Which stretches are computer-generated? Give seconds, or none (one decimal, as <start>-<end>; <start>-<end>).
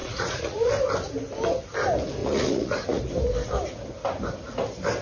0.0-0.7; 2.2-3.0